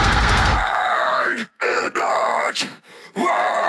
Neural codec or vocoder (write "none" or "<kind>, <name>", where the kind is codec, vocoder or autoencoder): codec, SNAC